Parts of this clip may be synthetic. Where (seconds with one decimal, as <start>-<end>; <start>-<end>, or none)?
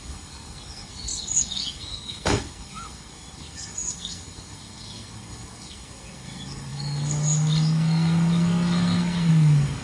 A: 0.0-9.8